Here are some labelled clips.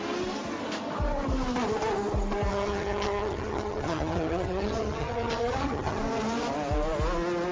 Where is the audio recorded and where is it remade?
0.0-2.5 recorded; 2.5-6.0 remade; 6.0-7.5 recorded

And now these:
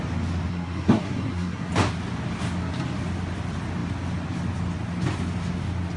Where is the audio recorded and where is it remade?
0.0-0.5 recorded; 0.5-1.7 remade; 1.7-6.0 recorded

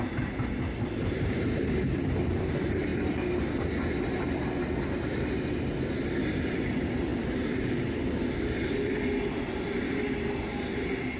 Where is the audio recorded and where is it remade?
0.0-11.2 recorded